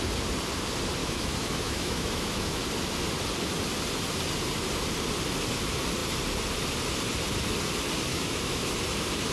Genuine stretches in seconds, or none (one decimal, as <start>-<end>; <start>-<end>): 0.0-1.0; 2.6-8.1; 8.7-9.3